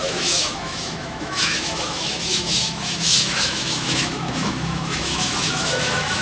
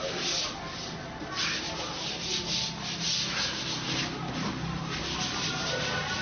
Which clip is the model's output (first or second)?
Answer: first